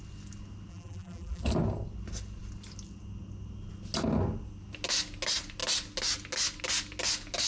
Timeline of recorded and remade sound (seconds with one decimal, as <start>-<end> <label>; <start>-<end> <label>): 0.0-0.7 recorded; 0.7-1.4 remade; 1.4-7.5 recorded